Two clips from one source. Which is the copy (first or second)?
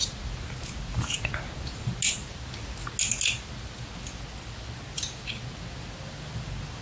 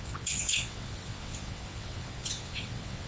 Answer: second